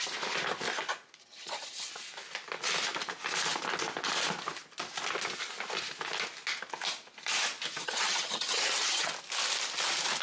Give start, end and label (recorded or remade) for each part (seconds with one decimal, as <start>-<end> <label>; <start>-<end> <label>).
0.0-1.2 recorded; 1.2-1.9 remade; 1.9-7.8 recorded; 7.8-9.1 remade; 9.1-10.2 recorded